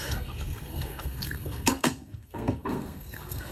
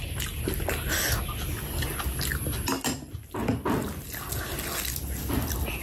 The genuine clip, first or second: second